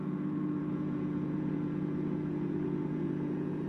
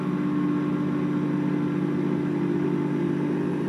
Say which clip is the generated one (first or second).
first